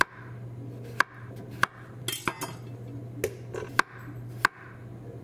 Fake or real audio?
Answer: real